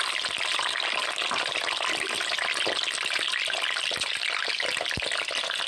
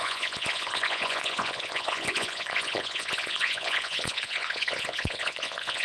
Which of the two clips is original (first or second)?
first